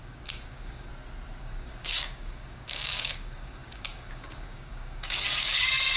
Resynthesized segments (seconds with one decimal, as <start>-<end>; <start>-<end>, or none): 0.0-0.9; 1.4-6.0